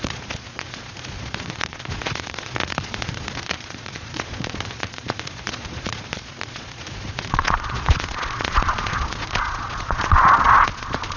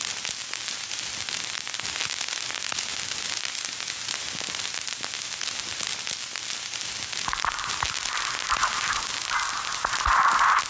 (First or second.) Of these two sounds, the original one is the second